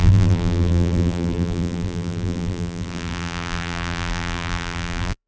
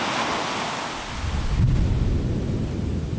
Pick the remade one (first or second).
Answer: first